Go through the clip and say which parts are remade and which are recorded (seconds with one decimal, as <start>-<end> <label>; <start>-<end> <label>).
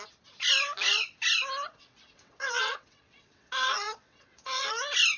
0.0-1.7 recorded; 1.7-4.8 remade; 4.8-5.2 recorded